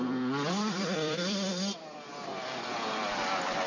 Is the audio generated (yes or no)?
yes